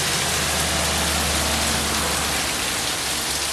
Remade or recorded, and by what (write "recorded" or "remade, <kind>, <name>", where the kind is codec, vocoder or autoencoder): recorded